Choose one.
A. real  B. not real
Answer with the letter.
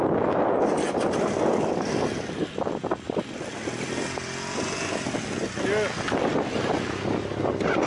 A